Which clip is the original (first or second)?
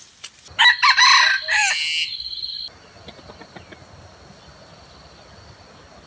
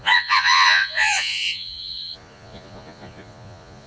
first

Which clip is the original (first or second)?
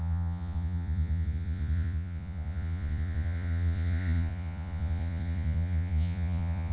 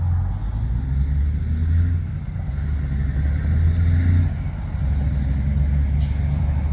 second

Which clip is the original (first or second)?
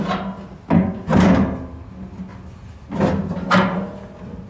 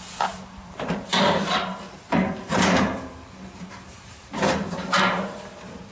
first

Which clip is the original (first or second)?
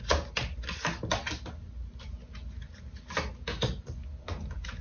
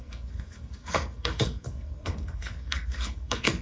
first